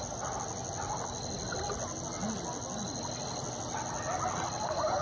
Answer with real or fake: real